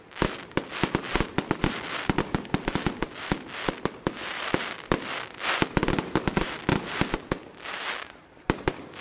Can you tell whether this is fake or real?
real